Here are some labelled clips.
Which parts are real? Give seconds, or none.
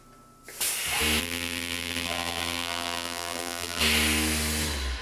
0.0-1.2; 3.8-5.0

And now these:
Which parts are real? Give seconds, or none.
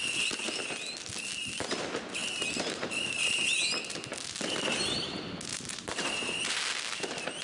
0.0-2.2; 3.2-5.5; 6.6-7.4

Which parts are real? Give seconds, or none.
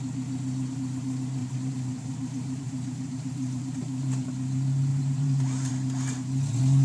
0.0-1.4; 4.3-4.9; 5.7-6.8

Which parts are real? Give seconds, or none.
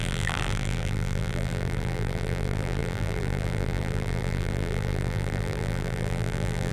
none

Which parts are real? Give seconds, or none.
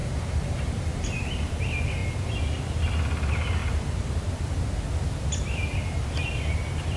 1.6-3.6; 4.4-7.0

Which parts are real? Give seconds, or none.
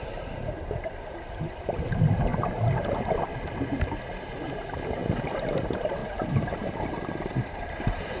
2.3-2.9; 5.0-5.5